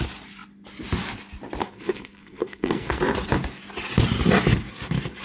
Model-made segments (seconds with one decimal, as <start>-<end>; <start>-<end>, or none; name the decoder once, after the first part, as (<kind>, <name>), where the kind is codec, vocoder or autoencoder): 1.6-3.0 (codec, SNAC)